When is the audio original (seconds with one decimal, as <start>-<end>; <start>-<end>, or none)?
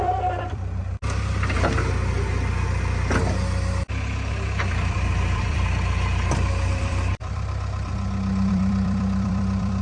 0.8-4.3; 7.9-8.5